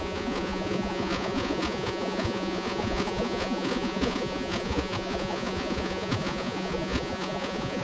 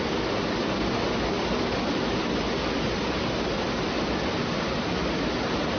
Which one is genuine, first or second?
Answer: second